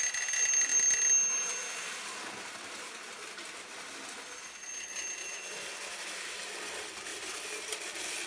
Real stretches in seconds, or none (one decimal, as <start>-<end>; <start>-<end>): 0.0-7.1; 7.7-8.3